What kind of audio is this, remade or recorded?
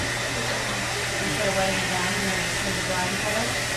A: recorded